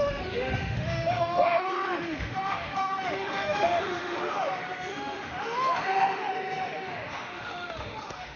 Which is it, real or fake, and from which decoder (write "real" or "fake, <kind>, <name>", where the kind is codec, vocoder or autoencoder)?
fake, autoencoder, DAC-VAE